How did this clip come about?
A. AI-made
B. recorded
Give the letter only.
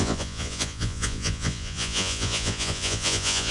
A